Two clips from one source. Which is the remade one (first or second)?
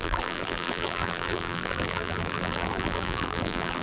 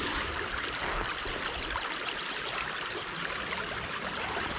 first